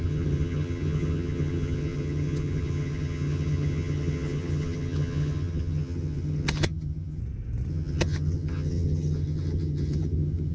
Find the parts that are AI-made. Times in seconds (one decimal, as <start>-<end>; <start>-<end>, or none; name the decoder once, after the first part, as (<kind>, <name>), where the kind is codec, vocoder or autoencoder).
0.0-7.2 (vocoder, HiFi-GAN); 7.7-10.5